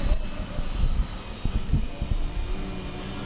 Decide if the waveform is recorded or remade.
recorded